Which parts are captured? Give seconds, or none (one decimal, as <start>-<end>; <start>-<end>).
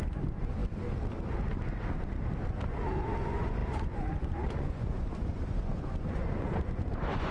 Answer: 0.6-3.2